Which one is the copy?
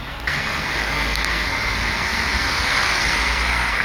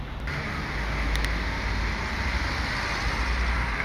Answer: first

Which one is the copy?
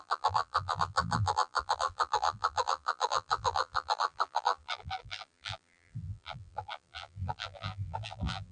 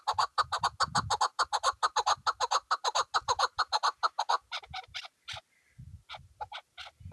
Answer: first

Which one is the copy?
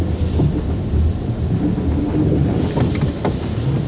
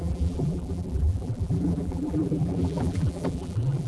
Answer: second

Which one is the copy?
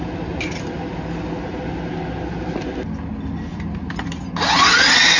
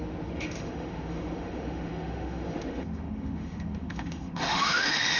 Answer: second